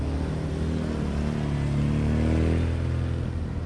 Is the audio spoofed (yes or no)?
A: no